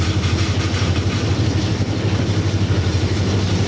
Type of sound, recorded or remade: recorded